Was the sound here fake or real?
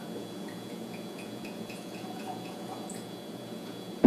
fake